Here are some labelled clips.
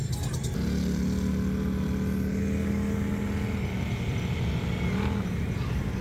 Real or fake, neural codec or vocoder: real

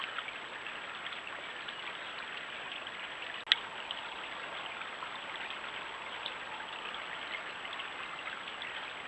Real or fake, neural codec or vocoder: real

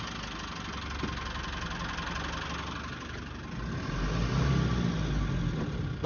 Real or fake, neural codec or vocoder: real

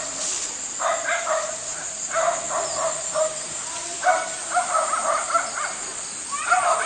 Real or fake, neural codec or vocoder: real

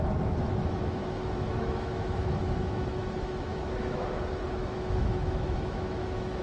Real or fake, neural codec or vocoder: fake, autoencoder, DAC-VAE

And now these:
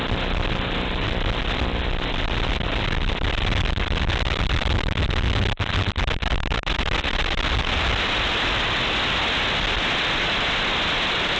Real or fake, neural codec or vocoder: real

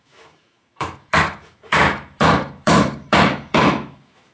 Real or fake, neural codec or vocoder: fake, autoencoder, DAC-VAE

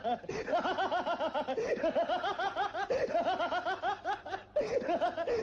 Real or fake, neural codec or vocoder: real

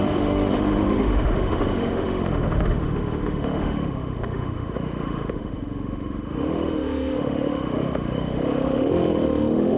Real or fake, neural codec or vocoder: fake, autoencoder, DAC-VAE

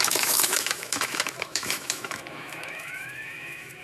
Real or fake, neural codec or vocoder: fake, autoencoder, DAC-VAE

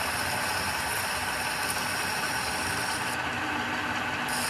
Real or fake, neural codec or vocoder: real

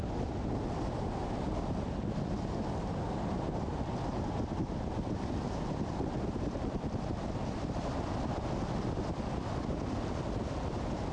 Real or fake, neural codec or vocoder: real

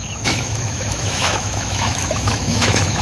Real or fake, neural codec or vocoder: fake, autoencoder, DAC-VAE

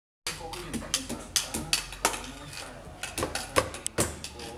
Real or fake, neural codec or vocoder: real